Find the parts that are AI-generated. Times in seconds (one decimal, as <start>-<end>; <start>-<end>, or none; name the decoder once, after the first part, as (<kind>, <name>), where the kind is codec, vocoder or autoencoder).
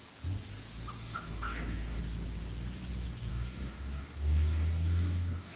1.0-2.0 (codec, DAC); 3.3-5.6